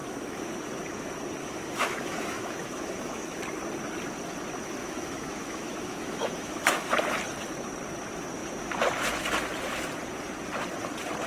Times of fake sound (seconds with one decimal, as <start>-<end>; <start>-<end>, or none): 0.0-0.5; 1.4-3.4; 4.8-6.9